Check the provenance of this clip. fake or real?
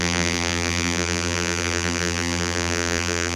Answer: fake